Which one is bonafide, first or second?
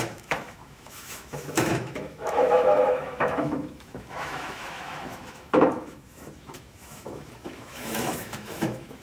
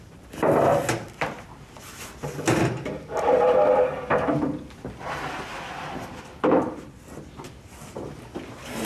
second